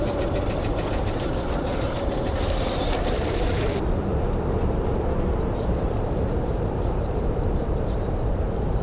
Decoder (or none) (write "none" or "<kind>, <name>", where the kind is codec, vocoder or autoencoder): vocoder, BigVGAN v2